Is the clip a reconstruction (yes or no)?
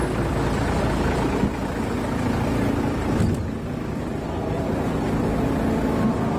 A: no